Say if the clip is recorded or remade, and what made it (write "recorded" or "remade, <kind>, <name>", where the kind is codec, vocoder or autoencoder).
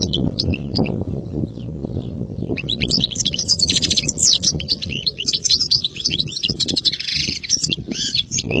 remade, vocoder, Vocos